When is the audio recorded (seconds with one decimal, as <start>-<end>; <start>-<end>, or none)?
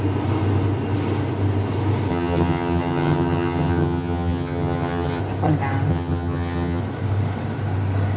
0.0-2.1; 5.2-5.9; 6.8-8.2